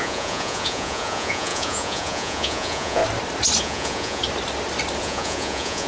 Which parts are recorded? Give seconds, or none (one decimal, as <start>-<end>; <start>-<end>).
3.0-3.6; 4.2-5.0